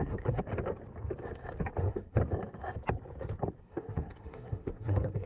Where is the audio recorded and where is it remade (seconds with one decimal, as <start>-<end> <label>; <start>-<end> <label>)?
0.0-0.5 remade; 0.5-1.8 recorded; 1.8-2.2 remade; 2.2-3.6 recorded; 3.6-5.3 remade